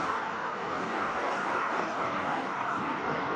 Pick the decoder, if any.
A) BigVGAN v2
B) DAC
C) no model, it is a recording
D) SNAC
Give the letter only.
B